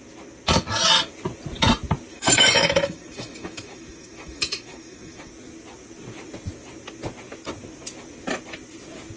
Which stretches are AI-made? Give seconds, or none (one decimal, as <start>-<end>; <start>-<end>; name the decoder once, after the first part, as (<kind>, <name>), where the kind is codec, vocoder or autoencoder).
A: 2.1-5.3 (autoencoder, DAC-VAE)